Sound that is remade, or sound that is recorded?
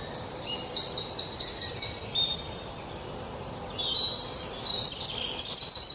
recorded